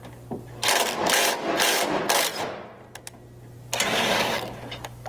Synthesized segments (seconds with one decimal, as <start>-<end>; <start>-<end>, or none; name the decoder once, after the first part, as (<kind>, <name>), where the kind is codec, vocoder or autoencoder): 3.9-5.1 (codec, DAC)